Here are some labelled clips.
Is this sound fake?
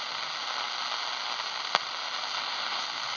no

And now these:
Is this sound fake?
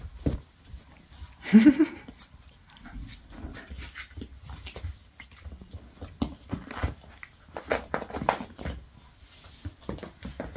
no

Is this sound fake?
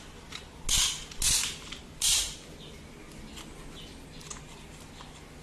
no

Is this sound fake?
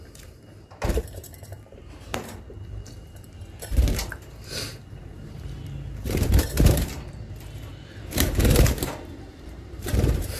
yes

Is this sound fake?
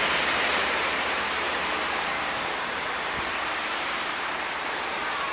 yes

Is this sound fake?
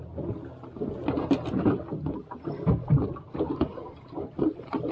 no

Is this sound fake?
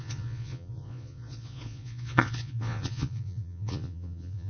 yes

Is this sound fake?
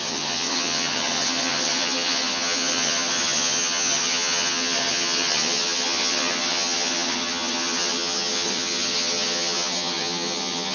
yes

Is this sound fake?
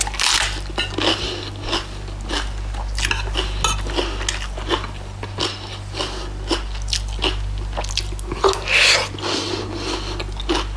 no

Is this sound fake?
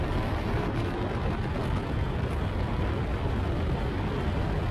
no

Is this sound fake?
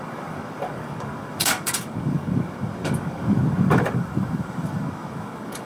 yes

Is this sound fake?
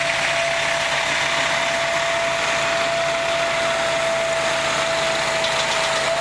no